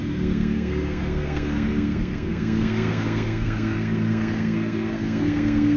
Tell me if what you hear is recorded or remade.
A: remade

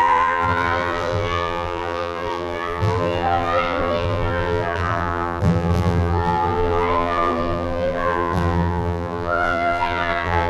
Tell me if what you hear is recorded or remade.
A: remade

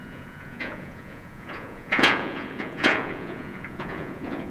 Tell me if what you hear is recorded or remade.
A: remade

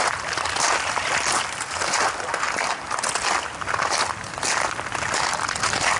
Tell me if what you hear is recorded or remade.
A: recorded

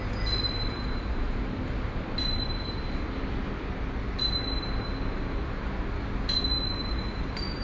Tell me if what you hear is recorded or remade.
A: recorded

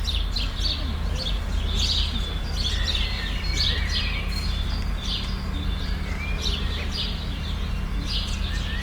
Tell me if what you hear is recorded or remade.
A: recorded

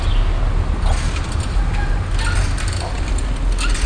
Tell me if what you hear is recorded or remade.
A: recorded